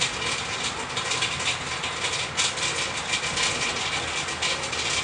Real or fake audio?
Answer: real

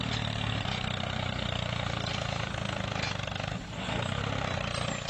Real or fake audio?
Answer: real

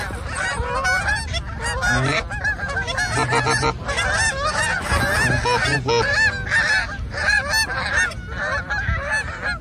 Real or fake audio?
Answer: real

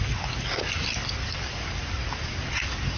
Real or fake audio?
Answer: real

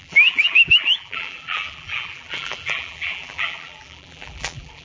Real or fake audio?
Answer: fake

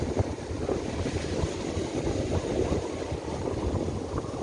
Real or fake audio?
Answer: real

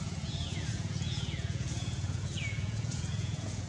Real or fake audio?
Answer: fake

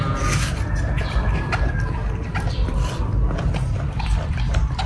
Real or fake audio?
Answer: fake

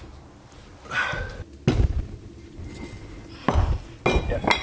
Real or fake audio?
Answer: real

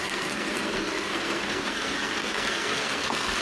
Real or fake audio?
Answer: fake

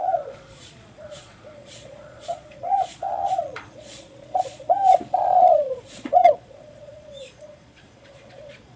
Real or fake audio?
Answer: fake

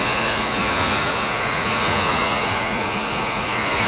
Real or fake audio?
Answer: fake